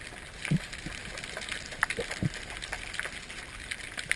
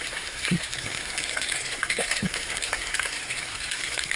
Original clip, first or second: first